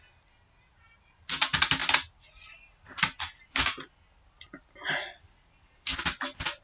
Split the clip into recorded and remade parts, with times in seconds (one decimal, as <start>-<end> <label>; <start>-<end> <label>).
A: 0.0-6.6 recorded